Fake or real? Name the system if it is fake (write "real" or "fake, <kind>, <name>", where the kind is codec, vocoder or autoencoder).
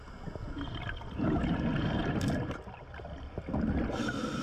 real